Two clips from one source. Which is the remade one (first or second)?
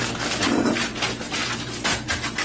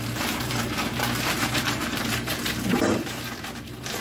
second